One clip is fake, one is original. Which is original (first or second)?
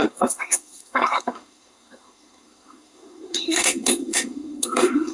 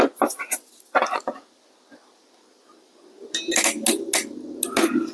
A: second